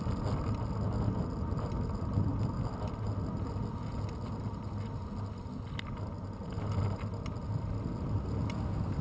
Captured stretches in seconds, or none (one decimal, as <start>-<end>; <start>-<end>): 0.0-9.0